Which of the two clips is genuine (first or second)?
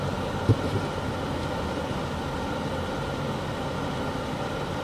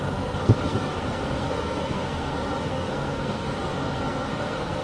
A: first